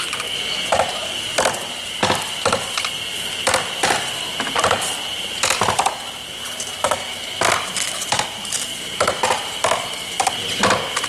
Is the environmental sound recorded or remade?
recorded